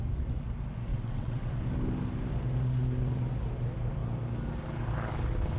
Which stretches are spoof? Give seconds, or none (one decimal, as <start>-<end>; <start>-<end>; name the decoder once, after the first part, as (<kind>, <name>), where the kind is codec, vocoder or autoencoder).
0.9-1.5 (vocoder, WaveNeXt)